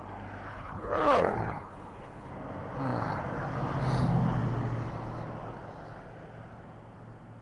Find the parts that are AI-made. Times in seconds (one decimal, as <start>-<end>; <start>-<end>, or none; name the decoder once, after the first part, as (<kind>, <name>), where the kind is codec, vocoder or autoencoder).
0.5-2.3 (codec, HILCodec)